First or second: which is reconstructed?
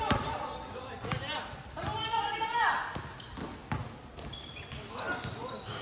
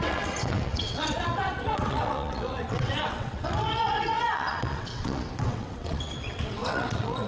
second